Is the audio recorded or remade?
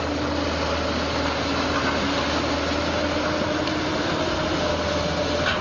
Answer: recorded